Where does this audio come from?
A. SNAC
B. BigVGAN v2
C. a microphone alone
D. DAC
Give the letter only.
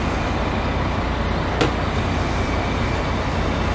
C